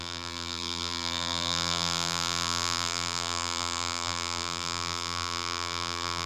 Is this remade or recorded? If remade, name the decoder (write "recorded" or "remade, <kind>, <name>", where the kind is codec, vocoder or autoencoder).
remade, vocoder, BigVGAN v2